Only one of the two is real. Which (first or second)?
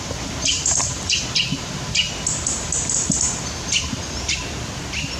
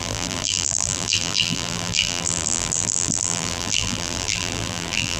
first